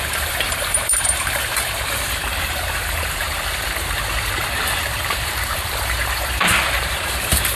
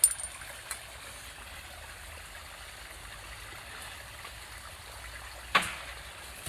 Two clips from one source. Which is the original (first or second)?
second